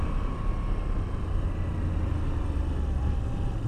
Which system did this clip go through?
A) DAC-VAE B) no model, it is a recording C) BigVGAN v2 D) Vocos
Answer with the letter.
B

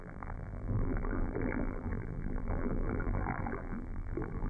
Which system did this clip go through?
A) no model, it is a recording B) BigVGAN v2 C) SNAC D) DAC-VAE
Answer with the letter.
B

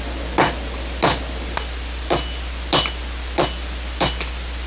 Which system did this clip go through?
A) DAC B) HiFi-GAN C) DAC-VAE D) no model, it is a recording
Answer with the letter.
D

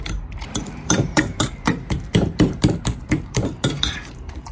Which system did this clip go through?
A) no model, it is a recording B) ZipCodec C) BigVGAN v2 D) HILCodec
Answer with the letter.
C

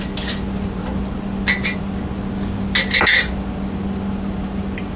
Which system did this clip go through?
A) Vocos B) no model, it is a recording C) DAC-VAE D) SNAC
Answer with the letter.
B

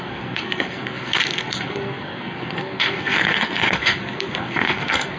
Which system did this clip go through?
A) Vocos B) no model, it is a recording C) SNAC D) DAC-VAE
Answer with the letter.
C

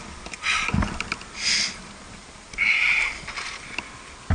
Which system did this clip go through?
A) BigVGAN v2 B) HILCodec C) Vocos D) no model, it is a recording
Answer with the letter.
D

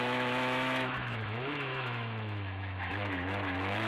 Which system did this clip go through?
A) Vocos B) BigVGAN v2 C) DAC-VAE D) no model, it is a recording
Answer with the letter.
C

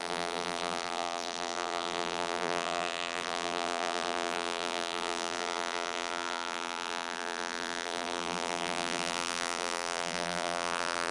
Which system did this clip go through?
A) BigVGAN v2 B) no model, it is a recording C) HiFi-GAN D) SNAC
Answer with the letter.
A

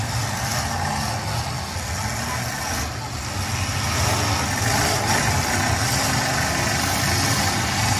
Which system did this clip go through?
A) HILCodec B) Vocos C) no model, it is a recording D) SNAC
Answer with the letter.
C